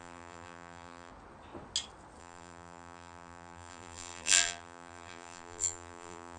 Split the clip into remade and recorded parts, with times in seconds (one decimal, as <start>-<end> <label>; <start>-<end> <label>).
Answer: 0.0-1.1 remade; 1.1-2.2 recorded; 2.2-6.4 remade